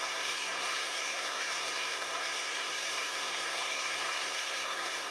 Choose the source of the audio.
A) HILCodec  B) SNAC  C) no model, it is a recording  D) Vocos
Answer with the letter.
B